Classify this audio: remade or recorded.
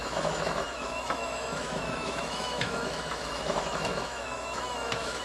remade